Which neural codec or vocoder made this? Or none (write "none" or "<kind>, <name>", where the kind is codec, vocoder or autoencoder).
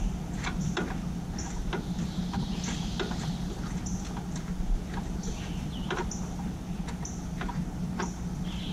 none